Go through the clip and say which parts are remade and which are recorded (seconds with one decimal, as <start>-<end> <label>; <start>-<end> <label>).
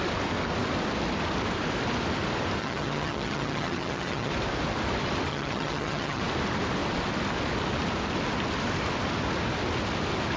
0.0-2.6 recorded; 2.6-4.3 remade; 4.3-5.3 recorded; 5.3-6.2 remade; 6.2-10.4 recorded